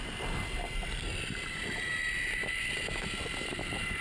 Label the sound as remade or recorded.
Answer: recorded